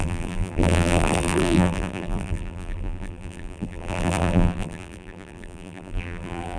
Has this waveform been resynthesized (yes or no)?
yes